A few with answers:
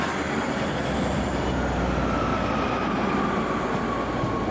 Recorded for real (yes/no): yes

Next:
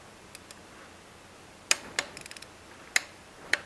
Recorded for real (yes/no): yes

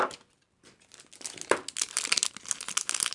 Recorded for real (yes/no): yes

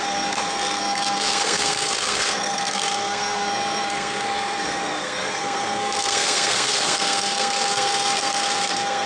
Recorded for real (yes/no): no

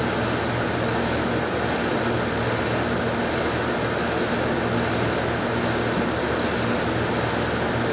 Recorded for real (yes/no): yes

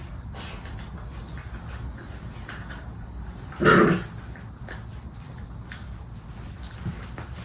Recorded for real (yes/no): yes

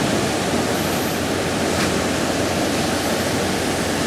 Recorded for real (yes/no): yes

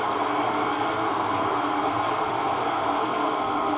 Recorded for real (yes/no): no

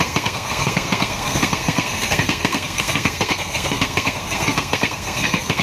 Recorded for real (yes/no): no